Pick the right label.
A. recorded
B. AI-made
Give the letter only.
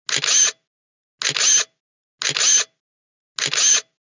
A